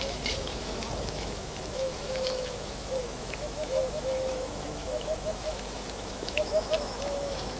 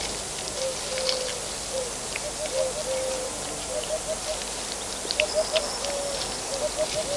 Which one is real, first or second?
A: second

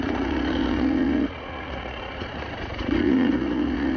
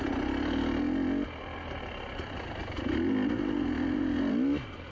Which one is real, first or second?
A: second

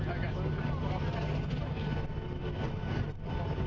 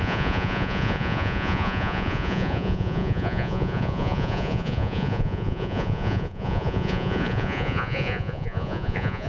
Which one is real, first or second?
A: first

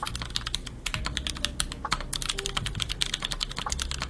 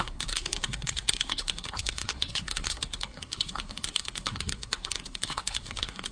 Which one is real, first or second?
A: first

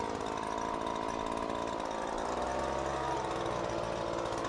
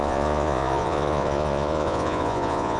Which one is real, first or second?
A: first